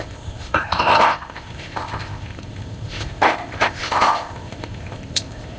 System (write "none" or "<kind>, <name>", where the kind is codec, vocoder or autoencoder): codec, ZipCodec